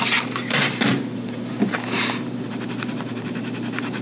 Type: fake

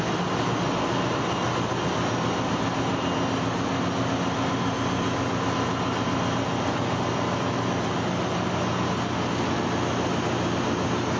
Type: real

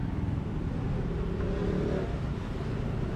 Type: real